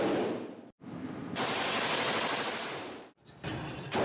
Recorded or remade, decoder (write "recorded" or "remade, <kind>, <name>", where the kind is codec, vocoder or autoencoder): recorded